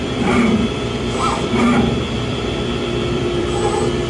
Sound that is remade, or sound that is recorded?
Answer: remade